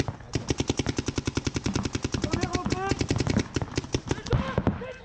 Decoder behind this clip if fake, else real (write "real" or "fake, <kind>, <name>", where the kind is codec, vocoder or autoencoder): real